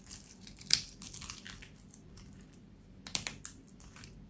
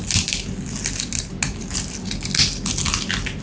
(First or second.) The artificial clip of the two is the first